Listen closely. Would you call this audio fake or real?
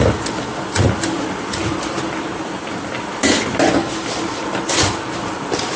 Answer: fake